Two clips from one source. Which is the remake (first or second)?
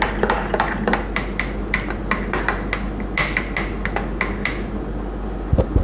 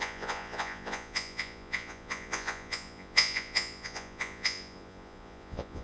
second